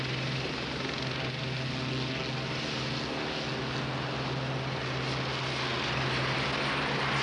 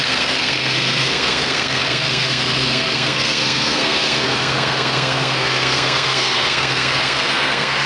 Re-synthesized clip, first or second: second